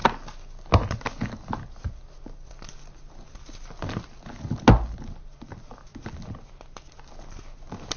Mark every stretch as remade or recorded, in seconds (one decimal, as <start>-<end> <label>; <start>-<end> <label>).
0.0-8.0 recorded